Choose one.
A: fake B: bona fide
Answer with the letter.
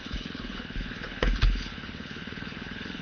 A